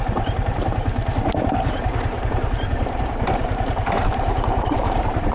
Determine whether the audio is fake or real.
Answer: fake